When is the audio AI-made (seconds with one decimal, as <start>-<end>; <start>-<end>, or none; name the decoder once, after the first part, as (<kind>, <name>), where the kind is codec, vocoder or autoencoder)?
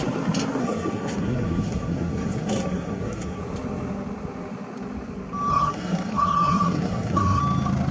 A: 0.6-3.4 (codec, SNAC); 5.5-7.4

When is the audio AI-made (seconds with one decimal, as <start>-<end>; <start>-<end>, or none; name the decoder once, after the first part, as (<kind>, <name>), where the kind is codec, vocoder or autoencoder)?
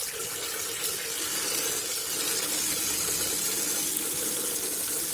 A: none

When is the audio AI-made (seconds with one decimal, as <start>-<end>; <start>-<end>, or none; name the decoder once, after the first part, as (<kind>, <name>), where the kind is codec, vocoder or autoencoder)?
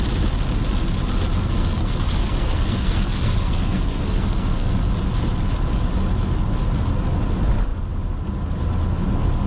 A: 1.4-4.9 (codec, SNAC)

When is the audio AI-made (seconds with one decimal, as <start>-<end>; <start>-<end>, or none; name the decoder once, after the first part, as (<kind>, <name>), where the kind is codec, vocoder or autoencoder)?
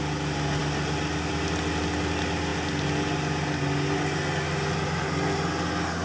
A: none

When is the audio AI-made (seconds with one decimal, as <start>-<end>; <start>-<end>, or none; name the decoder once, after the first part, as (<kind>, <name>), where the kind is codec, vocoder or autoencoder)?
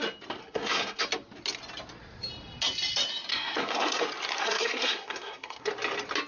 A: 0.4-1.0 (codec, SNAC); 3.3-4.0; 4.4-5.7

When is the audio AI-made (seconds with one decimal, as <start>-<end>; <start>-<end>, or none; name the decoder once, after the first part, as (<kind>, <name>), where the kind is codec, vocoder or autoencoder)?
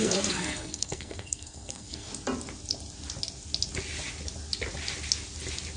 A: 0.0-2.1 (codec, SNAC)